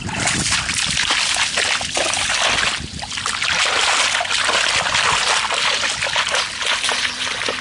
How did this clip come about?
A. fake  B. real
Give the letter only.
B